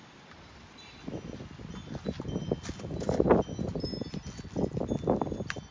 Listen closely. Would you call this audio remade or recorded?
recorded